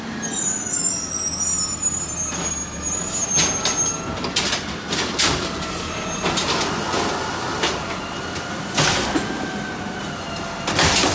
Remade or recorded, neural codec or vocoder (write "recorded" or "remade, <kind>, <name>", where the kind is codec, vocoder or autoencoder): recorded